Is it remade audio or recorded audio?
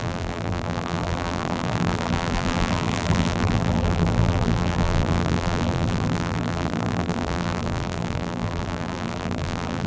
remade